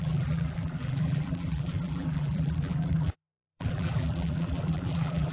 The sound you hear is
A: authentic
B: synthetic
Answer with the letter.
B